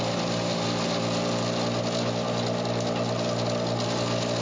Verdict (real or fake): real